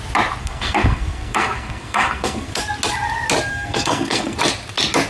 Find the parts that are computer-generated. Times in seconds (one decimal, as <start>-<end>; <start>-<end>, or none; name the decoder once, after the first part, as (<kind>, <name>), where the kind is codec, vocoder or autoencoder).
0.4-2.6 (codec, SNAC); 3.5-4.4